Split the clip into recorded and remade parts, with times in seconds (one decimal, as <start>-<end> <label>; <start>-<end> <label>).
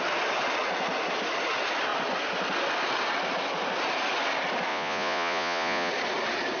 0.0-4.7 recorded; 4.7-5.9 remade; 5.9-6.6 recorded